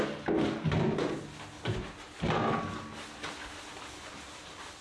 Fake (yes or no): no